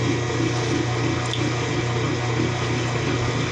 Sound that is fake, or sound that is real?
real